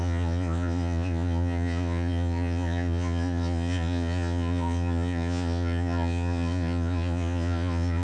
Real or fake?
fake